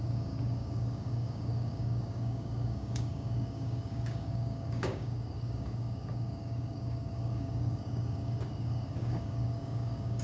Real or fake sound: fake